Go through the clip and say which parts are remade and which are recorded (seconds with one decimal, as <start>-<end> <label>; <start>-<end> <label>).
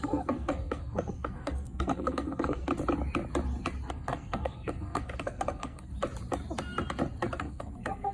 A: 0.0-2.7 remade; 2.7-3.9 recorded; 3.9-5.9 remade; 5.9-7.4 recorded; 7.4-8.1 remade